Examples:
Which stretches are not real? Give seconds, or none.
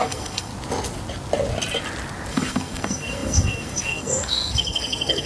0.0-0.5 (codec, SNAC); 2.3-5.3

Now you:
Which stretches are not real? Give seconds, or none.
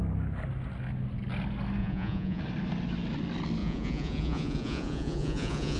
1.8-2.4 (vocoder, Vocos); 3.6-5.8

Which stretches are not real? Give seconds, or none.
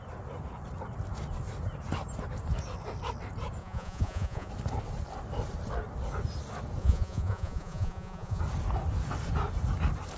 3.6-4.5 (vocoder, Vocos); 6.8-8.4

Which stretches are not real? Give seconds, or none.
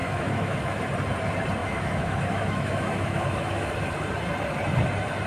0.0-0.8 (autoencoder, DAC-VAE); 1.6-3.7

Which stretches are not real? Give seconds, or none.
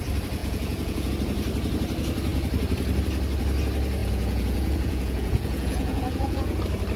0.4-1.1 (vocoder, Vocos); 4.0-6.6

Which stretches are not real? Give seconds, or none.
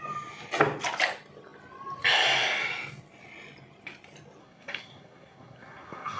4.4-6.2 (codec, SNAC)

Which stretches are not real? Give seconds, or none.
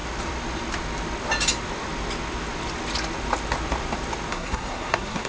4.3-5.3 (codec, SNAC)